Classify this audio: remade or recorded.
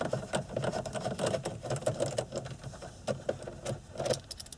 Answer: recorded